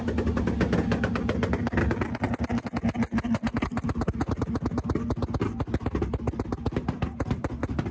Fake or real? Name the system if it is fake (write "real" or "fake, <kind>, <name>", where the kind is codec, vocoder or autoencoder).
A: real